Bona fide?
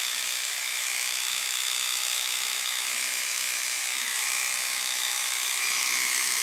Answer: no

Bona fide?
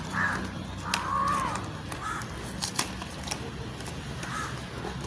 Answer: yes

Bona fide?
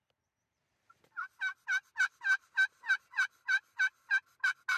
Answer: yes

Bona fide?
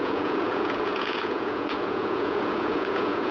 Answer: no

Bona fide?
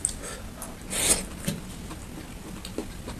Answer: yes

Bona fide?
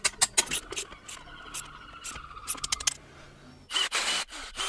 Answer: yes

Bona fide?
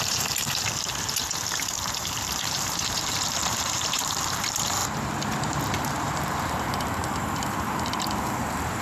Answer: no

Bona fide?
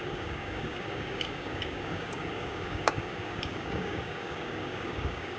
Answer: no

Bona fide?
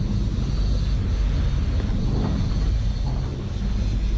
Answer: yes